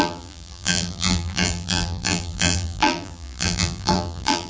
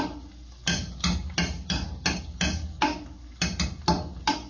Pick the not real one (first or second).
first